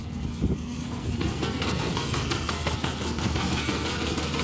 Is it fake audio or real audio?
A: fake